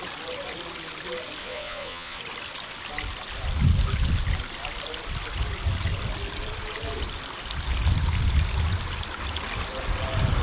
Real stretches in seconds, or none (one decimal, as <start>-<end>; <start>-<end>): 0.0-1.4; 2.2-10.4